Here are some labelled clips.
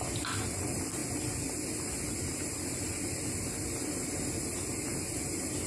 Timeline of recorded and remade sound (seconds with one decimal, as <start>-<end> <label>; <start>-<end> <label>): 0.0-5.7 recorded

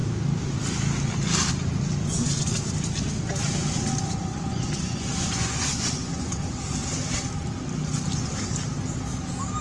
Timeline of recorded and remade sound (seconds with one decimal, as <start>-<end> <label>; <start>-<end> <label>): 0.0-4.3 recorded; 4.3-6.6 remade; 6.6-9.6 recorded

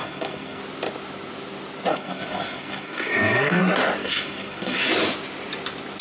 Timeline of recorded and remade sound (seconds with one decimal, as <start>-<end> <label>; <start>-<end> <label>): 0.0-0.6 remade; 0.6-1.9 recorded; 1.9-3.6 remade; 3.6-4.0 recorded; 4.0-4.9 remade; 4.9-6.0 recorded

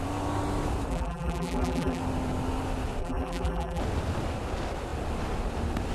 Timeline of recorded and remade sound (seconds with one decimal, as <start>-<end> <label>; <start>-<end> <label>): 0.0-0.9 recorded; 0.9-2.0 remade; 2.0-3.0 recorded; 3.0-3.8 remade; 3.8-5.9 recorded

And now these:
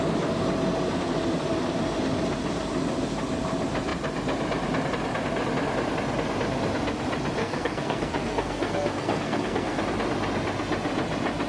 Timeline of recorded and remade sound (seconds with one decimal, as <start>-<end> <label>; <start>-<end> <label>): 0.0-7.4 recorded; 7.4-9.8 remade; 9.8-11.5 recorded

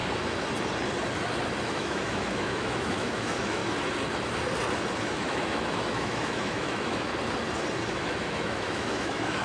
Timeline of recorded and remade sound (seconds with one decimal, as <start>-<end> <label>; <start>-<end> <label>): 0.0-1.6 recorded; 1.6-3.6 remade; 3.6-5.0 recorded; 5.0-7.1 remade; 7.1-7.9 recorded; 7.9-9.4 remade